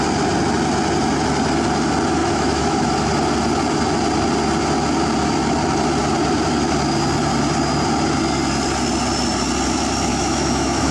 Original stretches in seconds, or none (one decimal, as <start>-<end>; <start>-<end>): 0.0-2.2; 2.9-10.1